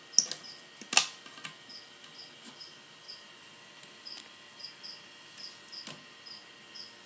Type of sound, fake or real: real